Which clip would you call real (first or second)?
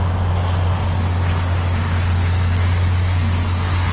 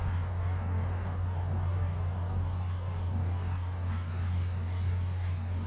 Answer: first